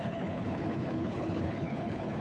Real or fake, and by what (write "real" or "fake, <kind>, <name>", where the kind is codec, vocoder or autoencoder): fake, codec, HILCodec